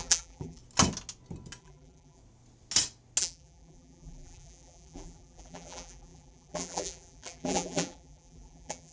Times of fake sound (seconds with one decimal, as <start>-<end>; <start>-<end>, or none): 0.0-0.6; 1.6-2.2; 3.2-8.9